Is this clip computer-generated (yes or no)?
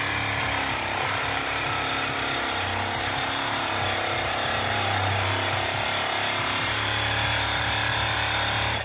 yes